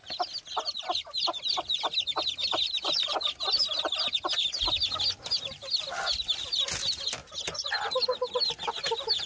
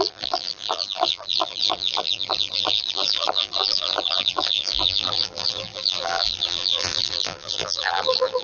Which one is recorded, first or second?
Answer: first